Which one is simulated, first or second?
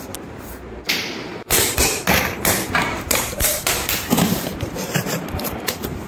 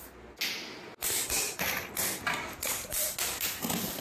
first